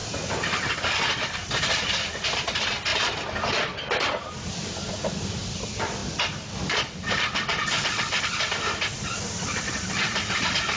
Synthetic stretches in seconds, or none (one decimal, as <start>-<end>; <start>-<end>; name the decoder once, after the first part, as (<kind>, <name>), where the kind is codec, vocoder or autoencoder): 0.0-10.8 (vocoder, BigVGAN v2)